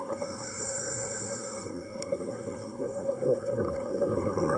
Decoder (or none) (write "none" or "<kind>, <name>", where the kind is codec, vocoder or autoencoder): codec, SNAC